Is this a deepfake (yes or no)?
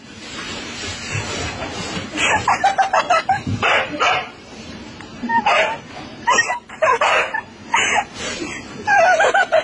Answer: yes